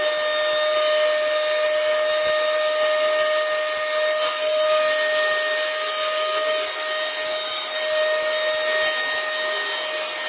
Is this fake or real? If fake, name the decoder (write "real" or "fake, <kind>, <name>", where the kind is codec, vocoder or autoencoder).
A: real